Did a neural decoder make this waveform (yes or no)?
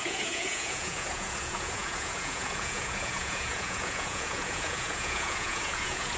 yes